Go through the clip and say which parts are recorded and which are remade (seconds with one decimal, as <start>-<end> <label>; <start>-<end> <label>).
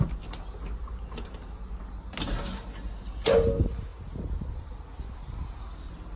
0.0-6.2 recorded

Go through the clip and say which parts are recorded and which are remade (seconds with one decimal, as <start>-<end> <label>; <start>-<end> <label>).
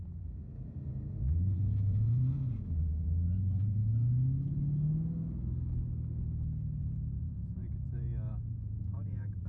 0.0-3.8 remade; 3.8-6.8 recorded; 6.8-9.5 remade